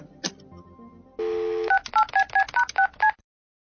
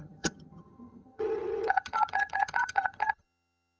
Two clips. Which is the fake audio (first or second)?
second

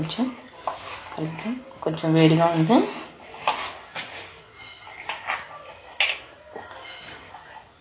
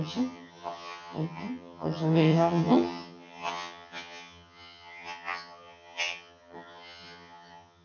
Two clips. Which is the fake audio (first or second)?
second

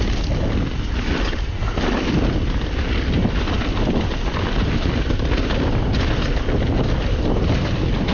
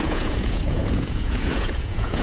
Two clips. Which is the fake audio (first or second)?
second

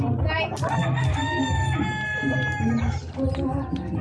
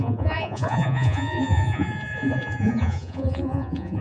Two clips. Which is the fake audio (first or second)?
second